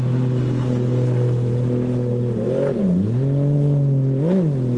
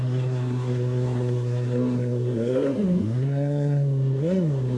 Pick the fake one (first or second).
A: second